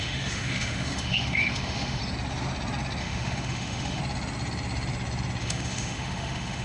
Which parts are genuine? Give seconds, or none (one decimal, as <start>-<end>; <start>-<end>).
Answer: 2.0-3.0; 4.0-5.4